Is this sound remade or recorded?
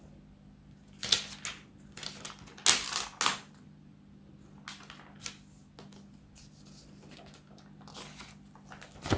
recorded